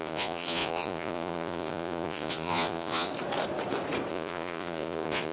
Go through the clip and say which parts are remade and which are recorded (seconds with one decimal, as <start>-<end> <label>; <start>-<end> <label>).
0.0-3.1 remade; 3.1-4.1 recorded; 4.1-5.3 remade